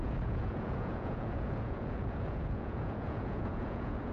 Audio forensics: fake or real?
fake